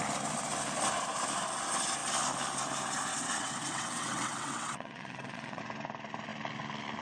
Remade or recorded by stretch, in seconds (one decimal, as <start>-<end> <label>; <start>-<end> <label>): 0.0-3.1 recorded; 3.1-5.6 remade; 5.6-7.0 recorded